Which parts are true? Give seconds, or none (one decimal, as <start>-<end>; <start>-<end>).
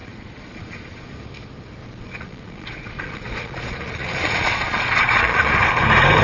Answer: 1.1-1.8; 5.5-6.2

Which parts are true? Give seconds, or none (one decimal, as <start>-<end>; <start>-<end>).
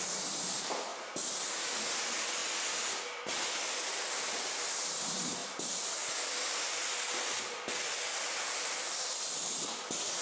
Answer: 2.4-4.7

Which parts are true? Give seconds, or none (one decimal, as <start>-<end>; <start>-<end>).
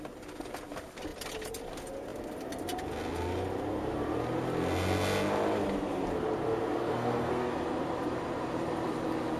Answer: 0.0-6.8; 7.5-9.4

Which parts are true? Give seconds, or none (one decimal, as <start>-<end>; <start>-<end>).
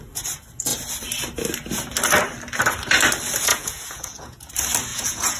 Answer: 0.0-3.5; 4.5-4.9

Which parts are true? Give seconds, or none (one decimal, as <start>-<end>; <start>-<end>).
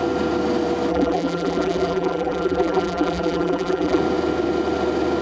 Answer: 0.0-0.9; 4.0-5.2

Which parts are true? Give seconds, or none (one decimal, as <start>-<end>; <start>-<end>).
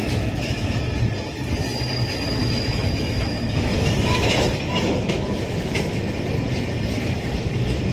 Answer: 0.8-2.4; 6.0-7.9